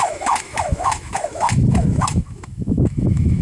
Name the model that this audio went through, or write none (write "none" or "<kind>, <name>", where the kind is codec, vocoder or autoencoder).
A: autoencoder, DAC-VAE